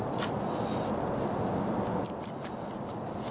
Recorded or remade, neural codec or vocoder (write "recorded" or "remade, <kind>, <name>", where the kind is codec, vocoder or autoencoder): recorded